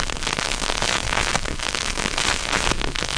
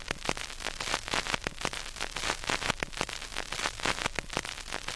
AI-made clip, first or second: first